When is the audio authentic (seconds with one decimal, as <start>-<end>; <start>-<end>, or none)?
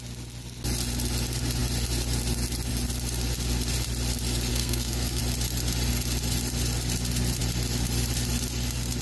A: 0.0-4.5; 5.2-9.0